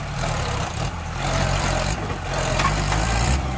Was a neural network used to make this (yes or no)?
yes